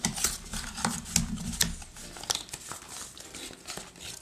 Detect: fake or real real